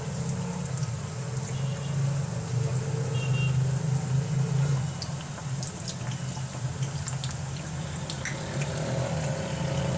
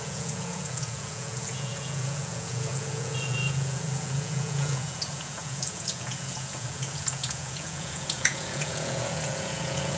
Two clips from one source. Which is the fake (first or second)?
second